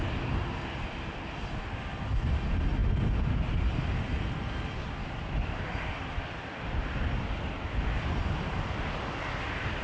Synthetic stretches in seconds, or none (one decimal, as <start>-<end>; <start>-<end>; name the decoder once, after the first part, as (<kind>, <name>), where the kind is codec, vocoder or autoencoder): none